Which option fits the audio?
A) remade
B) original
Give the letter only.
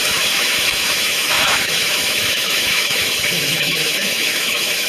A